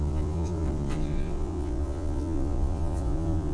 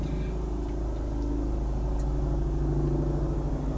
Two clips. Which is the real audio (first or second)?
second